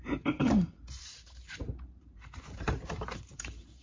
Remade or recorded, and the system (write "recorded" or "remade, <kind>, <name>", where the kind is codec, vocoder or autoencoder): remade, vocoder, BigVGAN v2